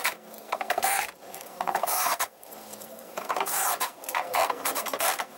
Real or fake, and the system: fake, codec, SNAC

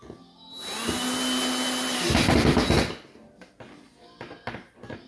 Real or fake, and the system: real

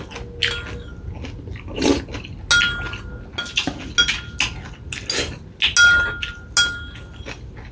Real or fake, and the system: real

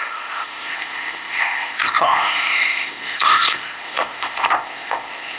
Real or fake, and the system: fake, codec, ZipCodec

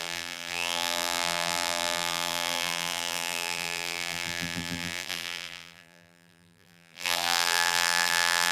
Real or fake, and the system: fake, vocoder, BigVGAN v2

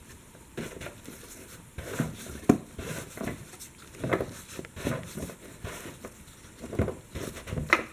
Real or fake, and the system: fake, vocoder, BigVGAN v2